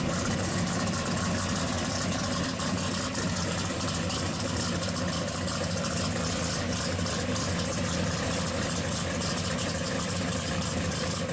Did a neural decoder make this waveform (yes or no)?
no